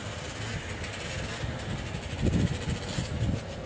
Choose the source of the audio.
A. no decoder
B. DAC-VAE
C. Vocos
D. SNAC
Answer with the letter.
A